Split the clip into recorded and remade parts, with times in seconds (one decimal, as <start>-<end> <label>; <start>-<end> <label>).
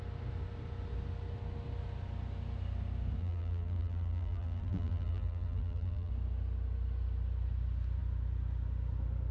0.0-3.2 recorded; 3.2-6.1 remade; 6.1-9.3 recorded